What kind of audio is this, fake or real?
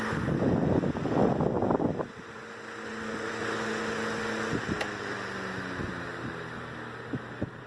real